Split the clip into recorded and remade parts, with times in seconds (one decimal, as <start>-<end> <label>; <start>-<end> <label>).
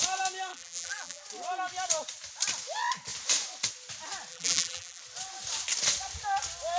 0.0-0.5 recorded; 0.5-1.2 remade; 1.2-4.3 recorded; 4.3-5.0 remade; 5.0-6.8 recorded